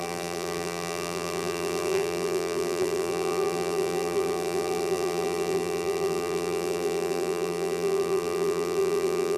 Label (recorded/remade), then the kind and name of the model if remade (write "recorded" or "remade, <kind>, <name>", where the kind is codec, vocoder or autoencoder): remade, vocoder, BigVGAN v2